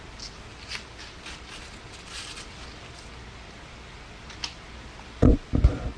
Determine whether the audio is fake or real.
real